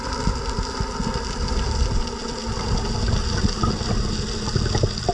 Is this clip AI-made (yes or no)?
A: no